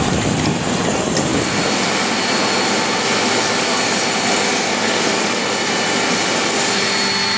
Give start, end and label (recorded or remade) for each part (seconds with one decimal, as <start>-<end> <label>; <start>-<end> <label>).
0.0-4.5 recorded; 4.5-5.4 remade; 5.4-7.4 recorded